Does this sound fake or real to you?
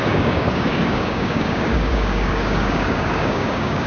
fake